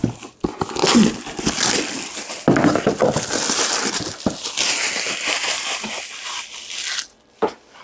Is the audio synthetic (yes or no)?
no